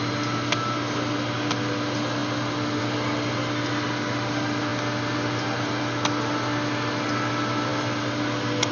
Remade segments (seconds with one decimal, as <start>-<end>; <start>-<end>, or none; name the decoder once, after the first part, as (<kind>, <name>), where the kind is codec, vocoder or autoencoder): none